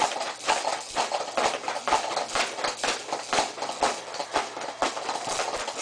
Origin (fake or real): real